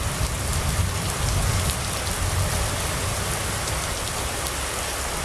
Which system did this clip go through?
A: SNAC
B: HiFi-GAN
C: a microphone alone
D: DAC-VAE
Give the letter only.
C